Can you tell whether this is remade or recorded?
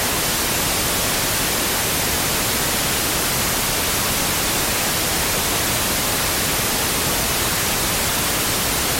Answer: recorded